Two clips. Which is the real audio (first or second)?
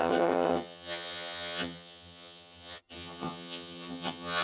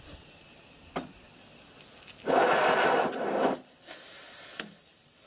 second